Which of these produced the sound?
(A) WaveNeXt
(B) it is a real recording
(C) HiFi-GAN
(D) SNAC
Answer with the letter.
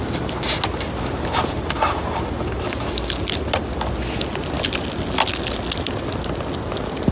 B